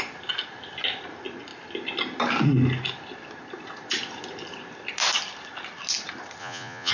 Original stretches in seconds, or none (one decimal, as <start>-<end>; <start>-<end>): 0.0-6.4